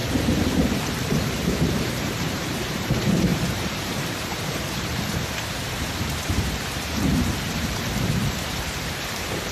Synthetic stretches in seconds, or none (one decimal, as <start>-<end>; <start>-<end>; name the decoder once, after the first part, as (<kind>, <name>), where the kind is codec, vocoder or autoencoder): 0.0-9.5 (vocoder, BigVGAN v2)